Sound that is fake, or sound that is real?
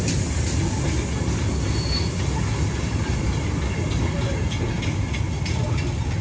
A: real